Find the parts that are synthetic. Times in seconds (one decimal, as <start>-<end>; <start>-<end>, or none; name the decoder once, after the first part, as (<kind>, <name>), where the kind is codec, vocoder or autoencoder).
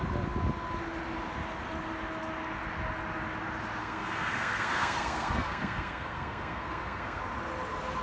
3.8-7.2 (codec, SNAC)